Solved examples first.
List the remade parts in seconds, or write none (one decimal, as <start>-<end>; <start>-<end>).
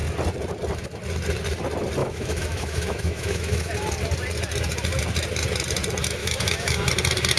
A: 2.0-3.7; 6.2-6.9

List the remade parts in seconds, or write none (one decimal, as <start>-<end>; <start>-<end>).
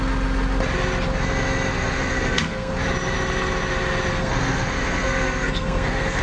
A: 1.7-2.7; 4.1-6.2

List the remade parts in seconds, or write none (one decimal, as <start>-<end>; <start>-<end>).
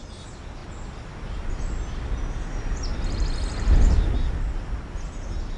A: none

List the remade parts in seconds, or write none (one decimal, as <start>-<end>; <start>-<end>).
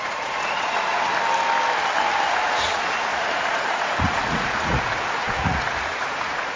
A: 0.0-1.1; 2.3-6.6